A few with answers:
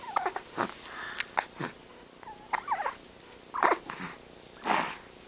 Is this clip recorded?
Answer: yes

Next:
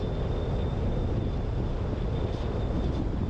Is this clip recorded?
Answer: yes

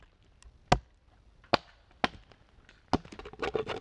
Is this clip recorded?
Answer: yes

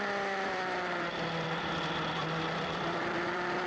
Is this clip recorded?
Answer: no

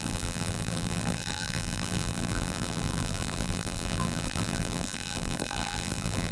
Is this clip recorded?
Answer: no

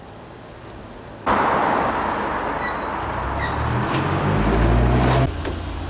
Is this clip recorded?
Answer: yes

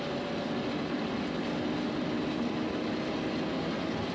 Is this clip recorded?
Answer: yes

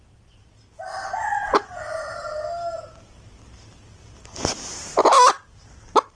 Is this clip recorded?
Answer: yes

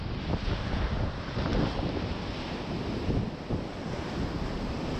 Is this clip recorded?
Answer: yes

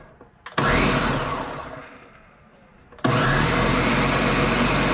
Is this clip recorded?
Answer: yes